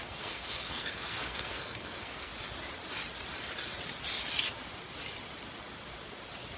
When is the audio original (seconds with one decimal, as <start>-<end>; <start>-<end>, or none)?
2.3-6.6